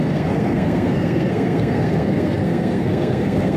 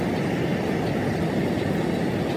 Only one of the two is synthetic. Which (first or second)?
first